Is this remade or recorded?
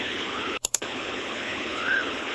remade